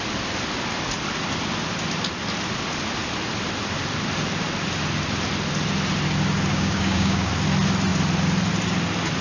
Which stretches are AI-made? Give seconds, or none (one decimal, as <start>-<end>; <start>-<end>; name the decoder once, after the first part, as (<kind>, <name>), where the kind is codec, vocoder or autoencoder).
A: 6.5-7.3 (codec, DAC)